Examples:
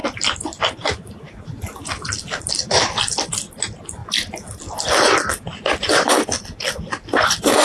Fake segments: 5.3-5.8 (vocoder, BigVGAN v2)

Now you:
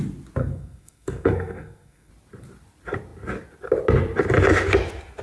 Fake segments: 0.4-2.1 (codec, SNAC)

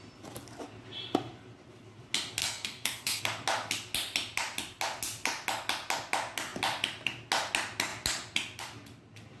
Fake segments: 2.4-3.2 (codec, SNAC)